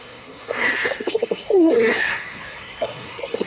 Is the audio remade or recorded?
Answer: remade